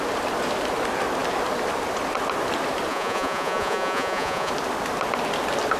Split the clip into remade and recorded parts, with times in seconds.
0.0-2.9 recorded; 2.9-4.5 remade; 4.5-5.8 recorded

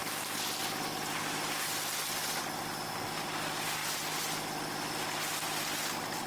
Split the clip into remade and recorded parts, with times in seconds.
0.0-3.0 remade; 3.0-6.3 recorded

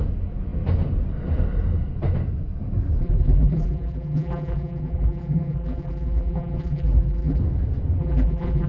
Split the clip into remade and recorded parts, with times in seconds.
0.0-3.0 recorded; 3.0-7.4 remade; 7.4-8.0 recorded; 8.0-8.7 remade